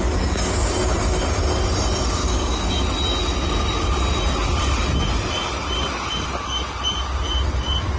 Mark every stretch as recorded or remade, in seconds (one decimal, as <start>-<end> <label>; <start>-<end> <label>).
0.0-2.2 recorded; 2.2-2.7 remade; 2.7-8.0 recorded